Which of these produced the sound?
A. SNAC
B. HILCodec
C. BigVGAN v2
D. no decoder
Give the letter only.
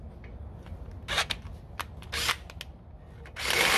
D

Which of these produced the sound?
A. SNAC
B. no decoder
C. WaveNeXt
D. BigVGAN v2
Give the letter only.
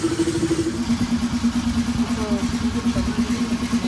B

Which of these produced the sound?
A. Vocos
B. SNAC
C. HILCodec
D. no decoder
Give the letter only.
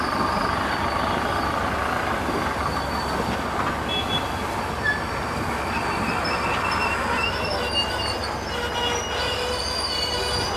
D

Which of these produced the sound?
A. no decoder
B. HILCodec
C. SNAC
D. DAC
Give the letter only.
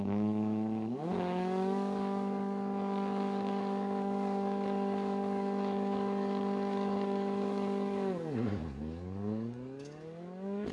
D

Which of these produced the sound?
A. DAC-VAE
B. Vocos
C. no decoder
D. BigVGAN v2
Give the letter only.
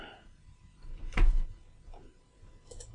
C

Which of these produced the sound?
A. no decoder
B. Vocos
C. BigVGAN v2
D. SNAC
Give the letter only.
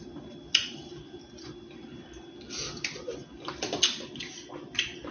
A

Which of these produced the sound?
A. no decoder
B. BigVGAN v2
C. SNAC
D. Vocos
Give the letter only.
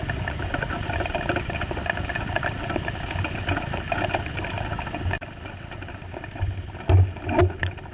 A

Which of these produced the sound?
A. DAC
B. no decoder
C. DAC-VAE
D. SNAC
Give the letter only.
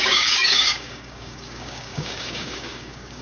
A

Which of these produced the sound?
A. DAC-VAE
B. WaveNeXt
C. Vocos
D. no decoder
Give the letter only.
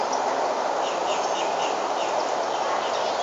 D